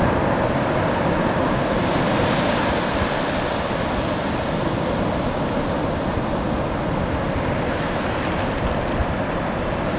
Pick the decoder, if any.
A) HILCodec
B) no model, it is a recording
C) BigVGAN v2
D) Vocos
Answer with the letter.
B